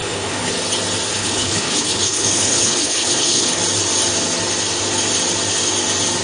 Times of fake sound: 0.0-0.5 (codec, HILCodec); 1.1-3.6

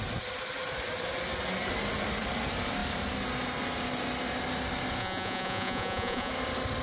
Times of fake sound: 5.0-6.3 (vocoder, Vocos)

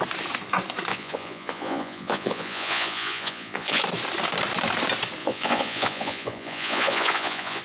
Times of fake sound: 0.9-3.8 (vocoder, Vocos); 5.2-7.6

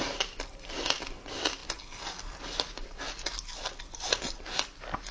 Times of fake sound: none

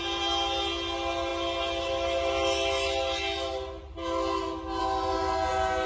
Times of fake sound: none